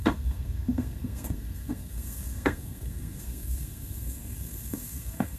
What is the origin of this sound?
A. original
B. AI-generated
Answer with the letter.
B